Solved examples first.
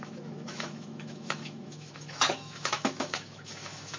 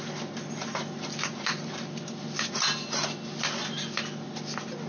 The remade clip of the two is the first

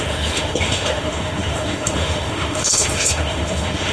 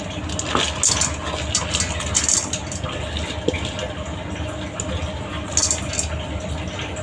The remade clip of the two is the first